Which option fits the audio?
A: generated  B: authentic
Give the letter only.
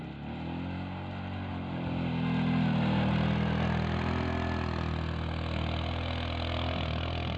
B